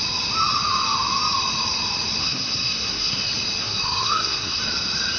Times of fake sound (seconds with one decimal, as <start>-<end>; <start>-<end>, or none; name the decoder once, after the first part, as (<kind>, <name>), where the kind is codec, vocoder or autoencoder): 2.2-3.2 (codec, SNAC); 3.6-4.6